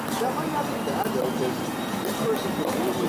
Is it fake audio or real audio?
real